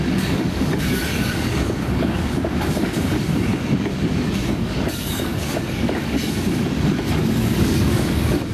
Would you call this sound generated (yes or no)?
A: yes